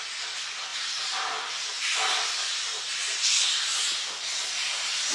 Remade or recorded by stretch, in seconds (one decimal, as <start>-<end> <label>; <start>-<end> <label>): 0.0-0.7 recorded; 0.7-3.8 remade; 3.8-5.1 recorded